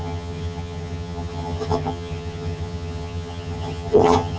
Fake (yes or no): yes